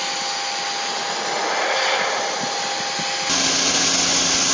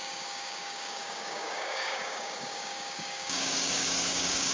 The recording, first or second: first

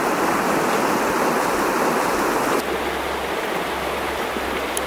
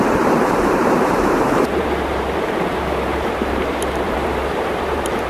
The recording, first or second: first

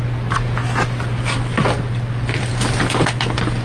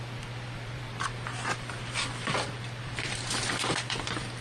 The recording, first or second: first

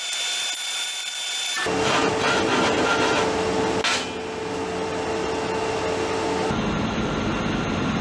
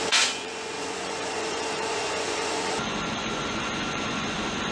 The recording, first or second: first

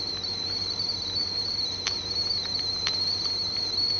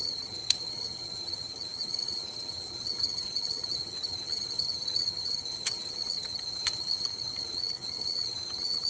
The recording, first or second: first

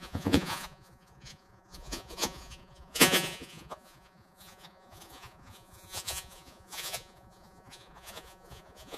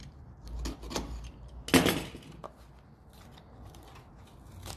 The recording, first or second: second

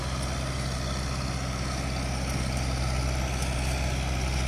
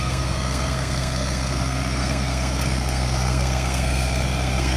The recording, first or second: first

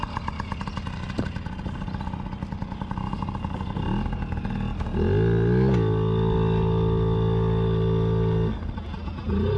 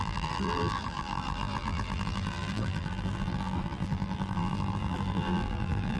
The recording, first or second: first